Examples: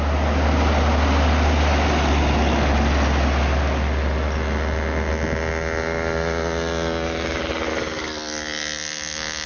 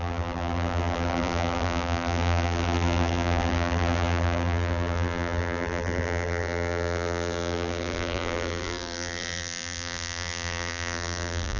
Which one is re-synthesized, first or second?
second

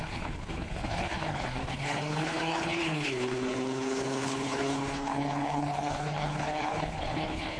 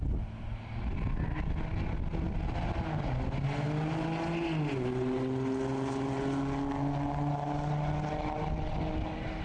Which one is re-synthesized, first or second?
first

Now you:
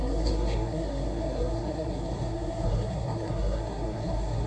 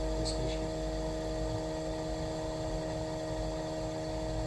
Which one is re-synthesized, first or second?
first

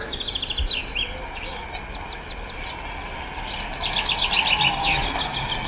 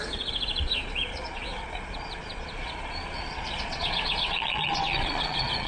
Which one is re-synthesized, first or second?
second